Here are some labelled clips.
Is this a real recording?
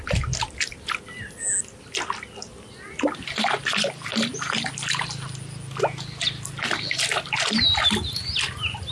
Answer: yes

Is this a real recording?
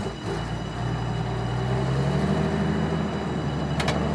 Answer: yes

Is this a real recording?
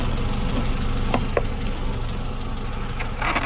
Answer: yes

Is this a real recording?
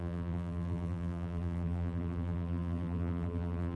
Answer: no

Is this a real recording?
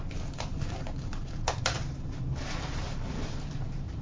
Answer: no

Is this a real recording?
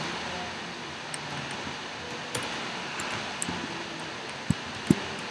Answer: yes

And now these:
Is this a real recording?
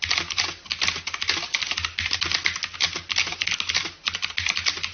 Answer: yes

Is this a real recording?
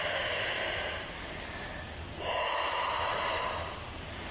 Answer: no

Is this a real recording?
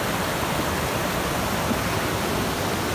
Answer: no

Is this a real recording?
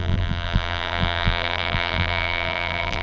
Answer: no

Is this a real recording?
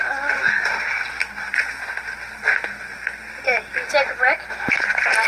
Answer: yes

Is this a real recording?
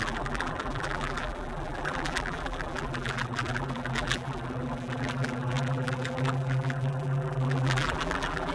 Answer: no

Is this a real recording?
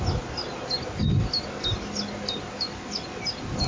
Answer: yes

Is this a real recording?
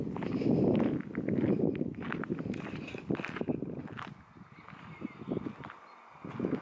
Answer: yes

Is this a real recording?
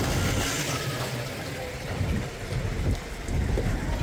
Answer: no